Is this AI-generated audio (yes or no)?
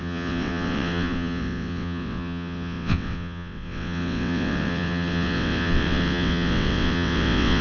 yes